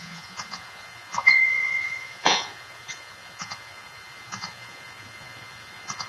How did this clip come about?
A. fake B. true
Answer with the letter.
A